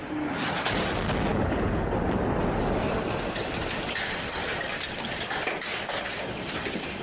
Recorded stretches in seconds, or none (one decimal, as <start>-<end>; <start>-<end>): 0.0-1.3; 1.9-7.0